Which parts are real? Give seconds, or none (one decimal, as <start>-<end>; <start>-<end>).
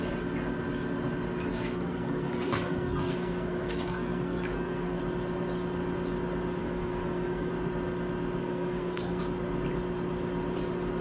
0.0-1.5; 5.0-6.6; 7.5-8.4; 9.2-11.0